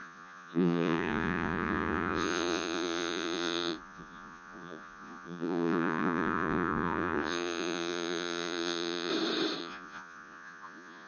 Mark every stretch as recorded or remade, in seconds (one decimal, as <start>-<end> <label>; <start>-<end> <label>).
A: 0.0-9.1 remade; 9.1-9.6 recorded; 9.6-11.1 remade